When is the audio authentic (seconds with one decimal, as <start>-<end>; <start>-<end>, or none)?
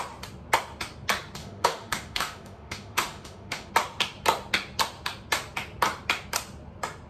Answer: 0.0-1.4; 3.7-7.1